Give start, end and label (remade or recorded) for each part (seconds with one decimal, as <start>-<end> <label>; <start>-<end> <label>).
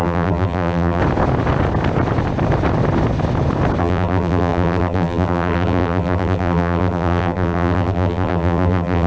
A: 0.0-1.0 remade; 1.0-3.8 recorded; 3.8-9.1 remade